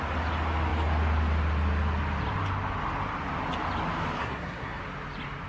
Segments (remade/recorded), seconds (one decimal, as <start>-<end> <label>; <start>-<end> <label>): 0.0-4.2 recorded; 4.2-4.8 remade; 4.8-5.5 recorded